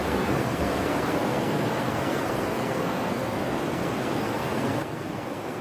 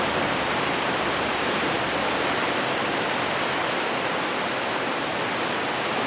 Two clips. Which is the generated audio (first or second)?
first